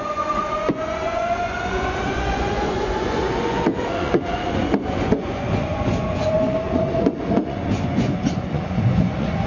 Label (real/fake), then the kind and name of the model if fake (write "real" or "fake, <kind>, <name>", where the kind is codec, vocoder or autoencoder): fake, vocoder, Vocos